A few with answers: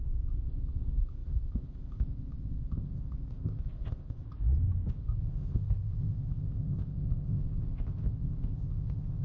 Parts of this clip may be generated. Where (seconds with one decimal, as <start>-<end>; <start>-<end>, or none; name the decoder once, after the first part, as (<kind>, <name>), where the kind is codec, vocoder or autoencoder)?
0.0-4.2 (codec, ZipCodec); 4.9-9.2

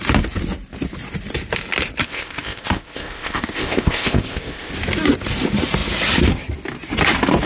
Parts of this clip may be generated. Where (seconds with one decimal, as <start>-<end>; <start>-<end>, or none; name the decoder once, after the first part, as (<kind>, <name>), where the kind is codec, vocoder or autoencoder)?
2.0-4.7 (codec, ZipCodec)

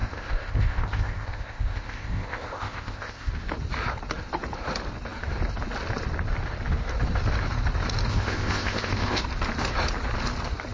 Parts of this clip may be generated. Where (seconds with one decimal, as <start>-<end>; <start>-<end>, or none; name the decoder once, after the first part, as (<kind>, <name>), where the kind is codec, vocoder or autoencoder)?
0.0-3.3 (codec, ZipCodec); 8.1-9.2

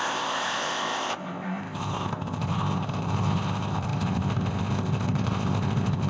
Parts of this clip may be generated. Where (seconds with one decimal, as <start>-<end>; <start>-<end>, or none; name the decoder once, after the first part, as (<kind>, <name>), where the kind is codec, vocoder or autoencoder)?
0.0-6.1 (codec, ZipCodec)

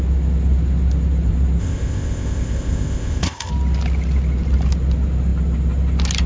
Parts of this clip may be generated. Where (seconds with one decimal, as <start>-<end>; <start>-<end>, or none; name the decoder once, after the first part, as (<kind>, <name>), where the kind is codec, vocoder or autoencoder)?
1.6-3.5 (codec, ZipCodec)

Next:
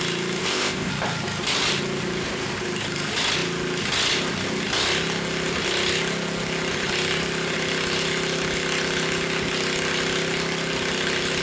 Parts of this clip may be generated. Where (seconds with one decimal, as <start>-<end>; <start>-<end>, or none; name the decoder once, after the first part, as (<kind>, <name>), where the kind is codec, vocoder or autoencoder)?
0.4-0.9 (codec, ZipCodec)

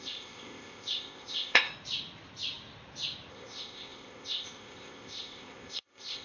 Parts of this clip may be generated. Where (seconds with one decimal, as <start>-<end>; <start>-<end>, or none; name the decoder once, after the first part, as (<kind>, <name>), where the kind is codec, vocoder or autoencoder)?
0.0-1.7 (codec, ZipCodec); 3.3-6.2

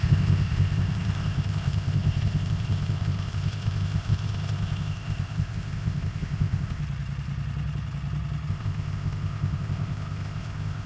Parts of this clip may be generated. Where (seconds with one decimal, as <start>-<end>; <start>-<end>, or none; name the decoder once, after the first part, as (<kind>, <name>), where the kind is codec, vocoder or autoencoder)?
0.0-6.8 (codec, ZipCodec); 8.5-10.9